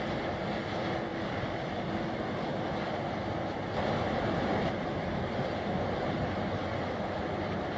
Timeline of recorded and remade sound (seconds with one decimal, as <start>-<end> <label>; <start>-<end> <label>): 0.0-7.8 recorded